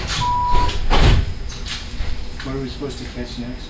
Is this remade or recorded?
recorded